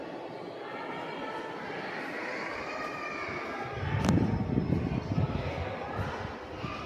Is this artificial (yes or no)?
no